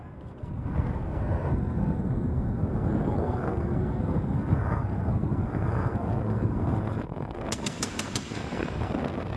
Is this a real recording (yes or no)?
no